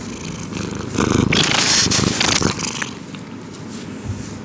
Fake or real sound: real